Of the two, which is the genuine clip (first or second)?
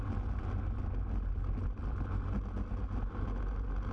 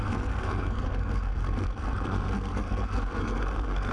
first